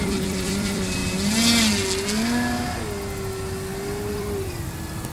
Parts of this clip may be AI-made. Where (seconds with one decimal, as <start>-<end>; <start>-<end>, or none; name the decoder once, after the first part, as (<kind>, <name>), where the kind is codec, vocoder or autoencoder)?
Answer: 0.0-1.0 (vocoder, BigVGAN v2); 4.1-5.1